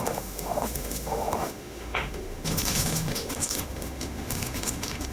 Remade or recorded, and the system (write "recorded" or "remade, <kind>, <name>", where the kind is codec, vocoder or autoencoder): remade, autoencoder, DAC-VAE